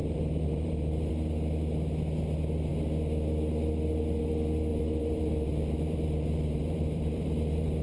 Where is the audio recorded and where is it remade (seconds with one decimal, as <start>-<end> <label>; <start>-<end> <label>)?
0.0-1.1 remade; 1.1-4.7 recorded; 4.7-7.8 remade